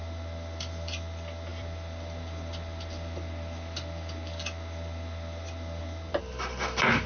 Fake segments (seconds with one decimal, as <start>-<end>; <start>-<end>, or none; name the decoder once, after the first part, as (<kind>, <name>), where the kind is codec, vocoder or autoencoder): none